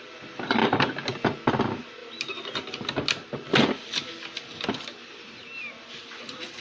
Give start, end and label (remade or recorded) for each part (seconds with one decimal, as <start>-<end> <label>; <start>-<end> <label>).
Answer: 0.0-6.6 recorded